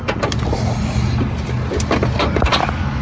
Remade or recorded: recorded